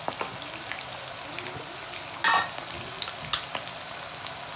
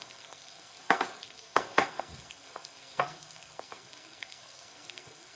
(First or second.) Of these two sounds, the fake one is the second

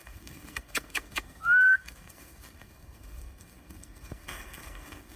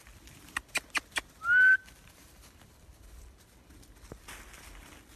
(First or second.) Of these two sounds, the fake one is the first